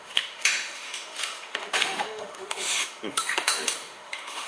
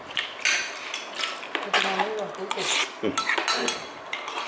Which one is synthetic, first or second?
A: first